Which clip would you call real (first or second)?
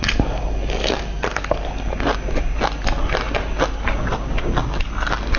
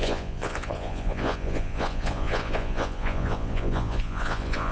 first